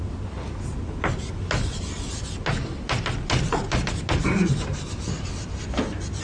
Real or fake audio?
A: real